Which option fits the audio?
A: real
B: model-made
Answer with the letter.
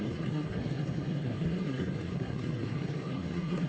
B